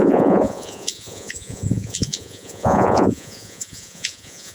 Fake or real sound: fake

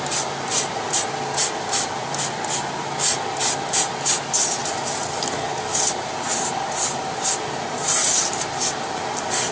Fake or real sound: real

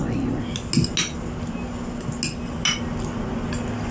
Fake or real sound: real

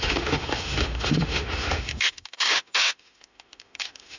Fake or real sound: fake